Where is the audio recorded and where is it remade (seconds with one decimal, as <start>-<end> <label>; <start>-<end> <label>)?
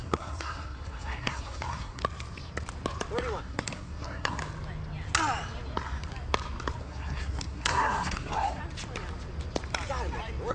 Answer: 0.0-2.0 remade; 2.0-3.4 recorded; 3.4-4.4 remade; 4.4-6.8 recorded; 6.8-8.6 remade; 8.6-10.5 recorded